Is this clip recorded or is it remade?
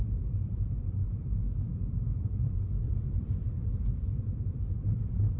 remade